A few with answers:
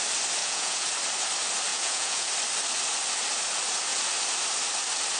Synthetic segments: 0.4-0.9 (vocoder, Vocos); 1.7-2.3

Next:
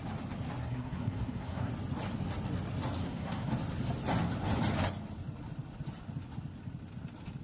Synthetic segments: 0.6-1.7 (codec, SNAC); 3.0-3.5